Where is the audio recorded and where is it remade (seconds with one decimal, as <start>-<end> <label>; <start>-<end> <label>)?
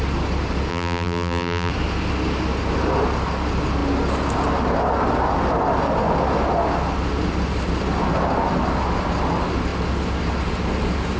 0.0-0.7 recorded; 0.7-1.7 remade; 1.7-11.2 recorded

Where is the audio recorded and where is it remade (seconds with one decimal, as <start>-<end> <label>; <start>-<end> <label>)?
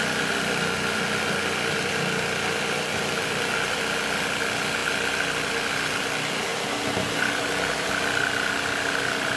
0.0-9.4 recorded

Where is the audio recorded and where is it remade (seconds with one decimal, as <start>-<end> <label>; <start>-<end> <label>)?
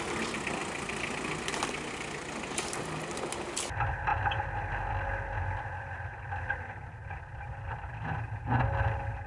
0.0-9.3 recorded